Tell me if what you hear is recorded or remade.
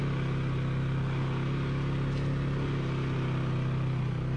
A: recorded